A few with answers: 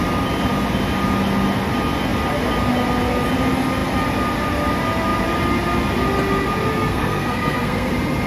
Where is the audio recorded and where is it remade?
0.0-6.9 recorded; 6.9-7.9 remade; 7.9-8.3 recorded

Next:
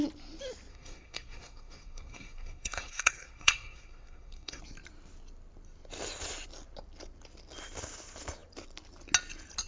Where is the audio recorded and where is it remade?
0.0-0.7 recorded; 0.7-4.6 remade; 4.6-9.7 recorded

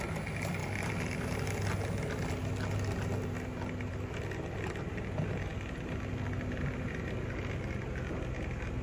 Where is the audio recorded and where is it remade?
0.0-8.8 recorded

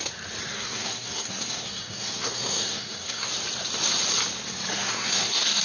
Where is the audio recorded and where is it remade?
0.0-0.5 recorded; 0.5-3.3 remade; 3.3-4.7 recorded; 4.7-5.6 remade